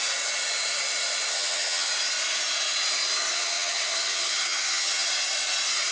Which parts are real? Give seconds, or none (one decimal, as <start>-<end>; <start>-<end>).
0.0-1.3; 1.9-3.3; 5.1-5.9